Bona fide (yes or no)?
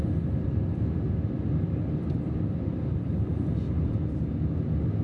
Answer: no